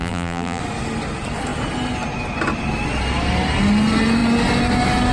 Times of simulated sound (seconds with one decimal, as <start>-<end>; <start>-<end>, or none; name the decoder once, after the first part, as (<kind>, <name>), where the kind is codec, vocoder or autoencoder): 0.0-0.6 (vocoder, BigVGAN v2)